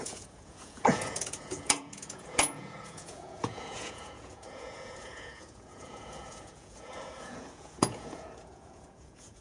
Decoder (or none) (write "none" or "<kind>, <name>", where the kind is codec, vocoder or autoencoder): vocoder, Vocos